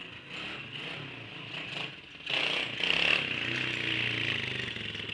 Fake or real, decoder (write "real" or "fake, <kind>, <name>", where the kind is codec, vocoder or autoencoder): real